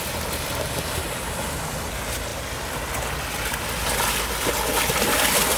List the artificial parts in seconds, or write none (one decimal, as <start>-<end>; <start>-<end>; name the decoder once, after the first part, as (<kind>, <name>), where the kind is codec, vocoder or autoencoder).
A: none